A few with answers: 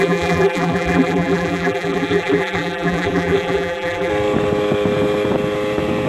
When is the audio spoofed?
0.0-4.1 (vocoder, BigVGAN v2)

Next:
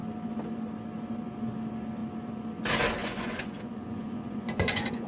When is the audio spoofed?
3.0-5.1 (vocoder, Vocos)

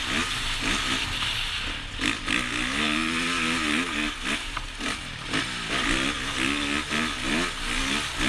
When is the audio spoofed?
none

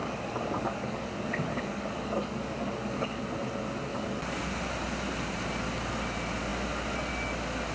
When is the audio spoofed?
0.0-3.2 (codec, DAC); 3.9-4.4

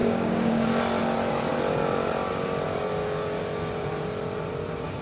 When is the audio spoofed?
0.0-0.8 (codec, DAC)

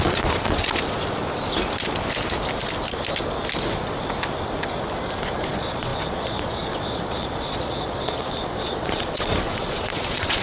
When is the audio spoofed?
0.0-0.6 (vocoder, Vocos); 5.5-10.4

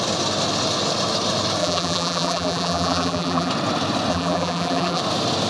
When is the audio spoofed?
1.6-3.5 (vocoder, BigVGAN v2); 4.1-5.0

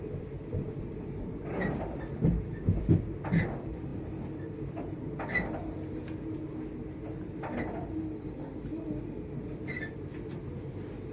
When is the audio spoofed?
none